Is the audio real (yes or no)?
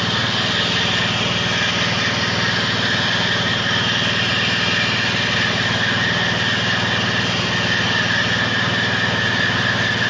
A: yes